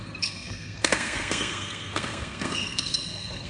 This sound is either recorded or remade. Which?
remade